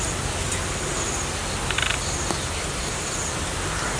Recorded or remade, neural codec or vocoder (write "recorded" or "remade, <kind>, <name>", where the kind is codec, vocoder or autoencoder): recorded